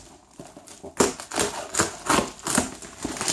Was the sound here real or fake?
real